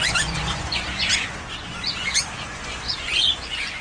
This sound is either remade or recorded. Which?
remade